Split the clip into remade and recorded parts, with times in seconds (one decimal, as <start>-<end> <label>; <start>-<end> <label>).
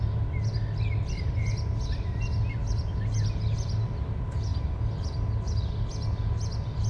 0.0-6.9 recorded